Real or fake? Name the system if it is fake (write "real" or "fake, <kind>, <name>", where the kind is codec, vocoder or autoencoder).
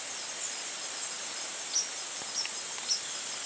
real